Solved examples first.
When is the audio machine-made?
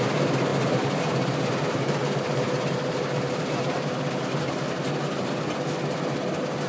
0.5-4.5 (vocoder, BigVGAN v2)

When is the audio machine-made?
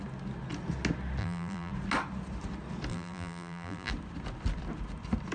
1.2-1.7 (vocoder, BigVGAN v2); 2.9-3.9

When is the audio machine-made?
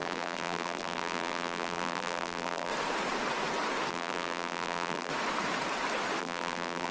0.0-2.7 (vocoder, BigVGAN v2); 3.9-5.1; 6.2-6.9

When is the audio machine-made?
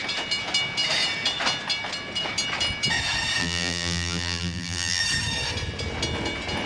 3.4-5.0 (vocoder, BigVGAN v2)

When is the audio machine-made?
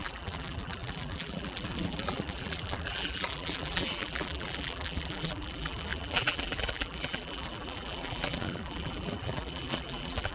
0.0-10.3 (vocoder, BigVGAN v2)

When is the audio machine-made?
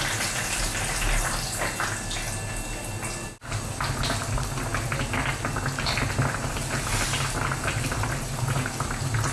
none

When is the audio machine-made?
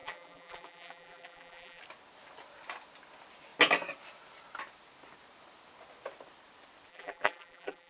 0.0-1.8 (vocoder, BigVGAN v2); 6.9-7.9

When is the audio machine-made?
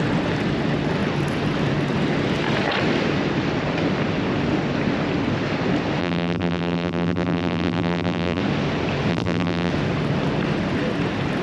6.0-8.4 (vocoder, BigVGAN v2); 9.1-9.7